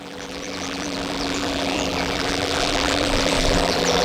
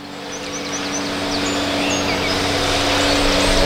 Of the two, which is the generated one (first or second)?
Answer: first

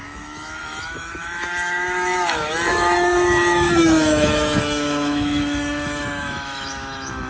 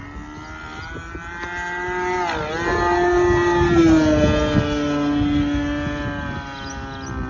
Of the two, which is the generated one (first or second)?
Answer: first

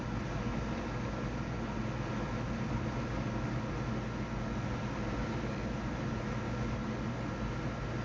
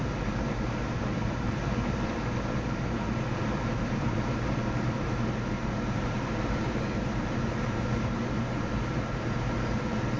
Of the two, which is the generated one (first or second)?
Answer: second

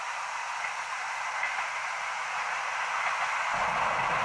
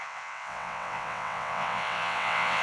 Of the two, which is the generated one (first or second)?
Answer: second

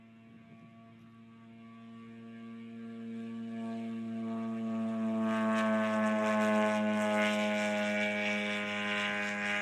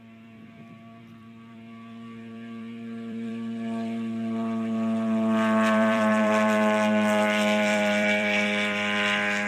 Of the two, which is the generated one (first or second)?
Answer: second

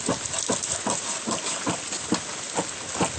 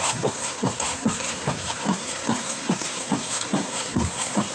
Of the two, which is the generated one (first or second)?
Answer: second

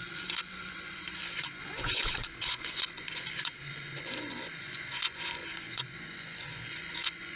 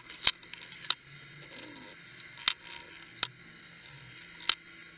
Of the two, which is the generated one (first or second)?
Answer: first